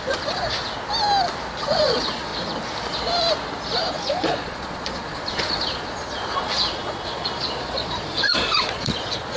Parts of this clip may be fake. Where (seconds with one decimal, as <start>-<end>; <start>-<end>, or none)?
0.0-0.6; 1.6-2.3; 3.8-9.4